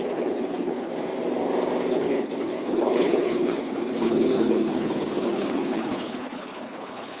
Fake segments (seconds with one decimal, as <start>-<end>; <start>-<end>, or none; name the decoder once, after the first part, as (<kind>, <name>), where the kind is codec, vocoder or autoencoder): 0.0-0.9 (codec, HILCodec); 1.9-7.2